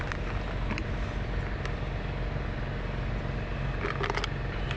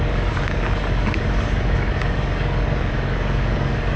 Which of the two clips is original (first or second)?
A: first